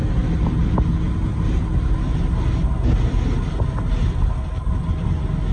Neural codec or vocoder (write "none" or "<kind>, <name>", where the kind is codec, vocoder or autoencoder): none